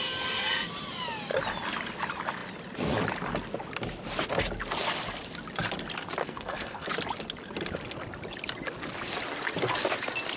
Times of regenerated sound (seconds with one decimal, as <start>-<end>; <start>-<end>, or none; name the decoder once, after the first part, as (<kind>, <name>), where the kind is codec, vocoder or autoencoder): 6.2-6.9 (codec, SNAC)